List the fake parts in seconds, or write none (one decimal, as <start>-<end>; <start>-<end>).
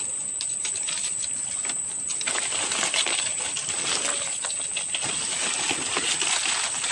3.6-4.4